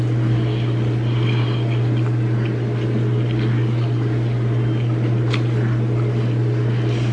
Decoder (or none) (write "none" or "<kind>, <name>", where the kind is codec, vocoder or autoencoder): none